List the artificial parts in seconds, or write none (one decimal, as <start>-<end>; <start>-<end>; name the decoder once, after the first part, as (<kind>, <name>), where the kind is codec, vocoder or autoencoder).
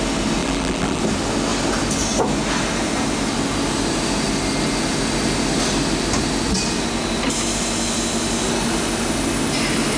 0.4-1.0 (vocoder, BigVGAN v2)